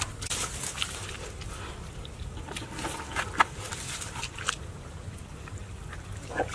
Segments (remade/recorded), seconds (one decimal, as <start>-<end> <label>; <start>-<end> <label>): 0.0-6.5 remade